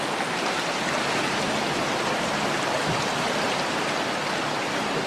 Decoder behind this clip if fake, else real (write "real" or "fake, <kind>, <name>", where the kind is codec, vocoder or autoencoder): real